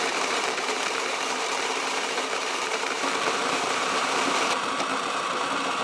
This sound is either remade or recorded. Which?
remade